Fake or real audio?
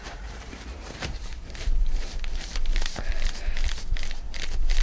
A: fake